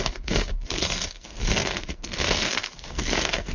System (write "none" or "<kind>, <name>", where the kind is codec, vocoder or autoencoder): codec, SNAC